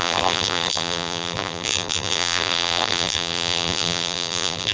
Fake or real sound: fake